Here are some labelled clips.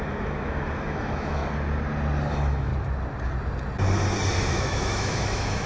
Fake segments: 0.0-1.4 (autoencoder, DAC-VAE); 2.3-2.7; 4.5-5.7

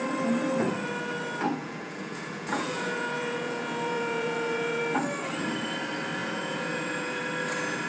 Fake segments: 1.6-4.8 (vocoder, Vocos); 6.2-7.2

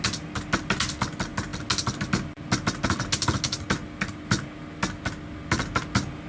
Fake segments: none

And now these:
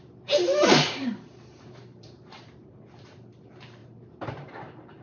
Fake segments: 0.0-5.0 (vocoder, BigVGAN v2)

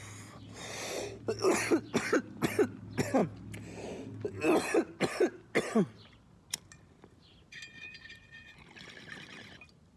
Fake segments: none

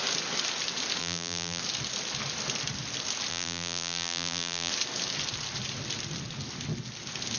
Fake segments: 1.0-1.6 (vocoder, BigVGAN v2); 3.3-4.7

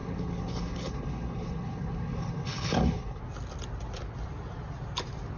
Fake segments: 0.0-3.2 (codec, HILCodec)